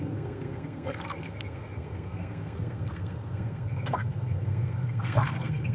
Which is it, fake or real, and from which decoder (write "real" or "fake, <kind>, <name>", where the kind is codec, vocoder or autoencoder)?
fake, codec, SNAC